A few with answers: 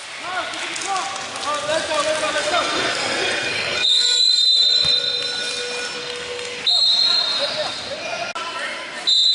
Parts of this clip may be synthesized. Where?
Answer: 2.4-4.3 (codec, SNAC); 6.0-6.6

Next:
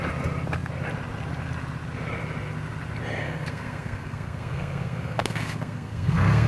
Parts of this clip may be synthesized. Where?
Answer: 3.2-6.5 (codec, SNAC)

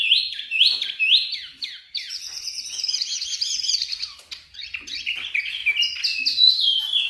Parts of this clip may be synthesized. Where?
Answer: 0.0-5.6 (vocoder, BigVGAN v2); 6.5-7.1

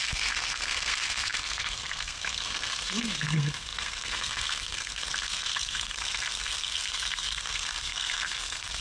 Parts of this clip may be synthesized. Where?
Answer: 0.0-8.8 (codec, SNAC)

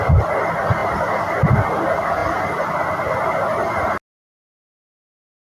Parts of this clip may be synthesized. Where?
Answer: 0.8-1.4 (vocoder, BigVGAN v2)

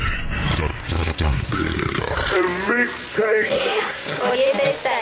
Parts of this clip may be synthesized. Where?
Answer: 0.7-2.0 (codec, SNAC); 3.1-4.2

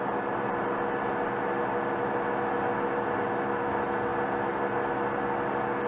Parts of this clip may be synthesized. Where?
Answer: none